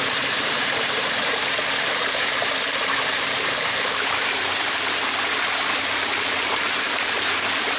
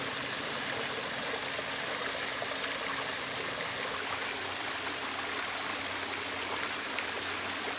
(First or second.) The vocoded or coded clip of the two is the first